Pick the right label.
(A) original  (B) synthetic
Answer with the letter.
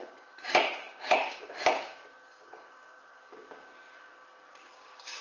B